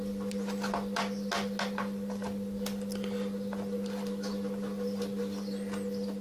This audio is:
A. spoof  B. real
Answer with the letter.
B